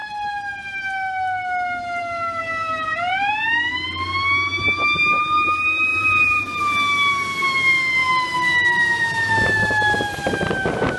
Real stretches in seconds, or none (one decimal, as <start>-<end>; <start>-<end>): 0.0-2.4; 3.3-5.9; 6.6-8.0; 9.3-11.0